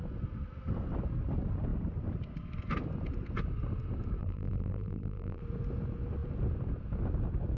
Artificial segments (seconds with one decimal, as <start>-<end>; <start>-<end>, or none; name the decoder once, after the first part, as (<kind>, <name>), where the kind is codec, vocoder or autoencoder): 4.2-5.4 (vocoder, BigVGAN v2)